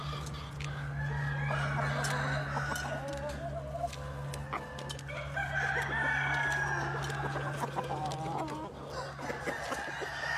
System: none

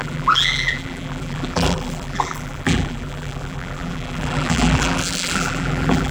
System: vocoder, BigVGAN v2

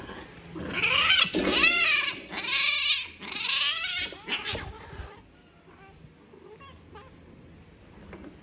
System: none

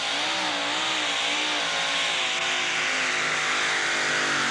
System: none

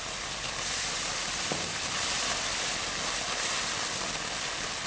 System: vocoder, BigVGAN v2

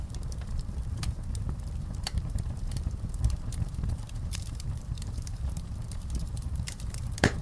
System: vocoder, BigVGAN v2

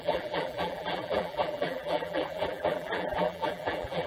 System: vocoder, BigVGAN v2